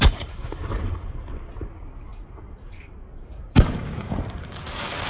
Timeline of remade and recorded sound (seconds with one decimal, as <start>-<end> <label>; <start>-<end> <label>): 0.0-5.1 remade